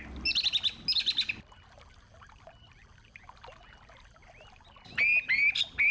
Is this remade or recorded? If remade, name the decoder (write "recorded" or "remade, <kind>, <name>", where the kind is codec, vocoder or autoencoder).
recorded